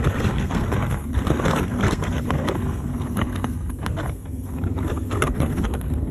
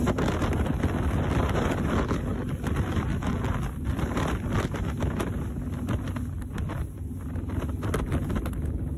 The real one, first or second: second